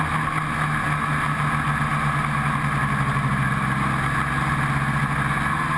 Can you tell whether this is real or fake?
real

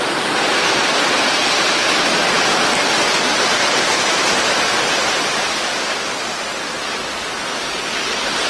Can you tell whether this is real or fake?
real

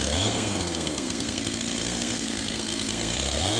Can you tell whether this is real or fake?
fake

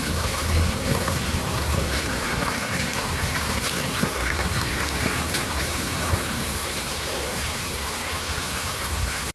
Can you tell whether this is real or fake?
fake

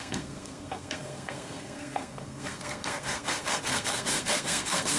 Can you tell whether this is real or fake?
fake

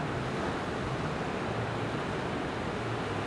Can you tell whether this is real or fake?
real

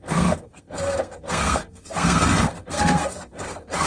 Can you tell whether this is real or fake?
fake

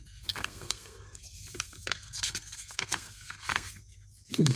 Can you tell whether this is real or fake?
fake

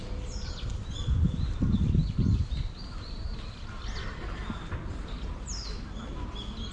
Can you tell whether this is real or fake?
real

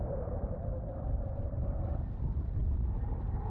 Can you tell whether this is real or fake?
real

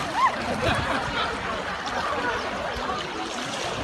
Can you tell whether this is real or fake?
real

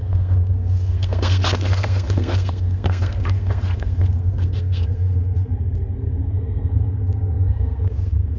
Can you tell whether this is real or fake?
fake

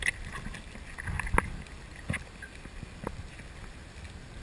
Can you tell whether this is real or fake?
real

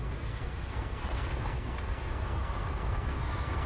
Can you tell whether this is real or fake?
fake